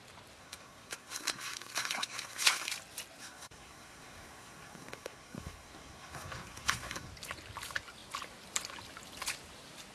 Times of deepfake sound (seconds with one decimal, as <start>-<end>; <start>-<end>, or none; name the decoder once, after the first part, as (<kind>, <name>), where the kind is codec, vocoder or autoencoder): 0.4-2.7 (codec, SNAC); 3.2-7.1